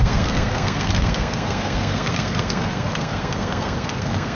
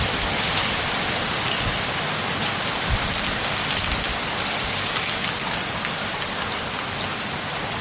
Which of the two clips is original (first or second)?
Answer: second